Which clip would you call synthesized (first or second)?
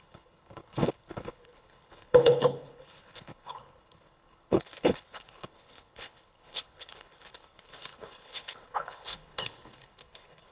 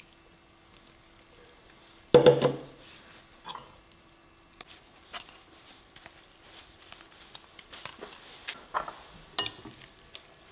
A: first